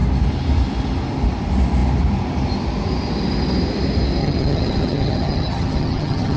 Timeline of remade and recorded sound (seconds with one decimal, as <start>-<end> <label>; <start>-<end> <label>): 0.0-4.2 recorded; 4.2-6.4 remade